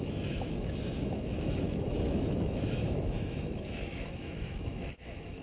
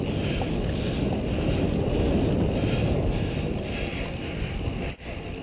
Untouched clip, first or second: second